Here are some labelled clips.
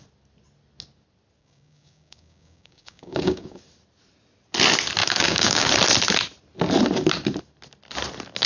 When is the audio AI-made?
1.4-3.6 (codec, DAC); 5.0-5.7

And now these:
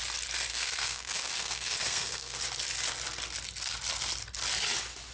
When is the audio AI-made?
0.5-2.4 (codec, SNAC)